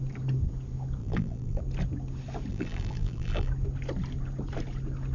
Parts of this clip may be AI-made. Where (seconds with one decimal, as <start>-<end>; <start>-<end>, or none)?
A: 1.0-1.6; 2.5-3.5